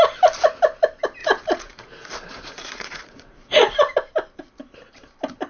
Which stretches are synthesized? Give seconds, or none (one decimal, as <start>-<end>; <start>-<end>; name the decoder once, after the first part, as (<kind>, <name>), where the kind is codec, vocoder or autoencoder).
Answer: 1.2-3.8 (vocoder, Vocos)